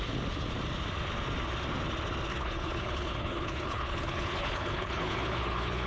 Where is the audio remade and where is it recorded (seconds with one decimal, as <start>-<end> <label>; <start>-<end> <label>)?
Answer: 0.0-2.3 recorded; 2.3-5.9 remade